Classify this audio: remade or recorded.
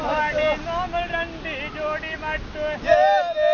recorded